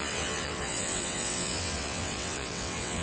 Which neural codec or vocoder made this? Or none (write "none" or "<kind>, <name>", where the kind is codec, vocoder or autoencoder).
vocoder, WaveNeXt